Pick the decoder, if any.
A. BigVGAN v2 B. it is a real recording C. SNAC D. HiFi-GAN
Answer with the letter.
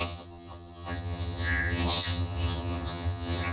D